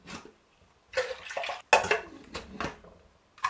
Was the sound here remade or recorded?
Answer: recorded